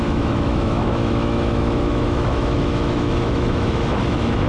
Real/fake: fake